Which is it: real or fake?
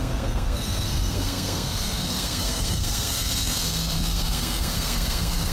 fake